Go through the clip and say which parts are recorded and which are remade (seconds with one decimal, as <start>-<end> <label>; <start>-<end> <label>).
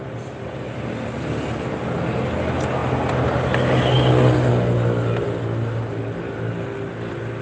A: 0.0-7.4 recorded